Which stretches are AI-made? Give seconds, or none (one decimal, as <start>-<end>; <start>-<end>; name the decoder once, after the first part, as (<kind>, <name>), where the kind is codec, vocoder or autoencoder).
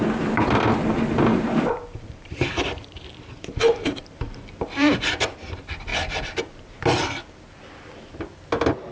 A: 1.3-4.6 (vocoder, BigVGAN v2); 5.9-6.6